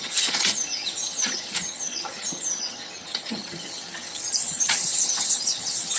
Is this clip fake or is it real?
fake